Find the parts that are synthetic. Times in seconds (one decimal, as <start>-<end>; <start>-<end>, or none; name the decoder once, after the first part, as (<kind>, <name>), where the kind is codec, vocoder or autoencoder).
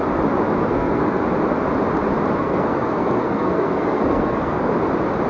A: 0.6-1.2 (codec, SNAC); 2.4-4.7